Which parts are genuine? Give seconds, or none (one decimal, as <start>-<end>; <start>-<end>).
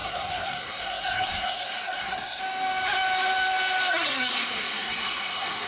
2.4-3.9